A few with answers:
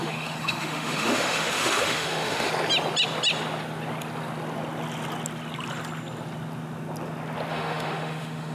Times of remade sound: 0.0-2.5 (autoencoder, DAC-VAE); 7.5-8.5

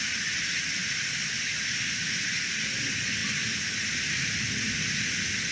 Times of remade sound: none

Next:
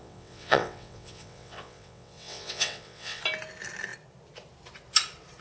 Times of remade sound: 0.0-3.2 (vocoder, WaveNeXt)